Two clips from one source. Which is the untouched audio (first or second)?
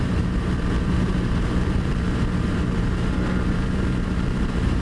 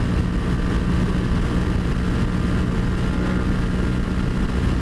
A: second